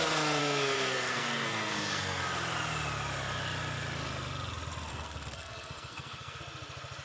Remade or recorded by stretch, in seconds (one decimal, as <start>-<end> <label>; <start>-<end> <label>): 0.0-0.4 recorded; 0.4-2.2 remade; 2.2-4.9 recorded; 4.9-6.4 remade; 6.4-7.0 recorded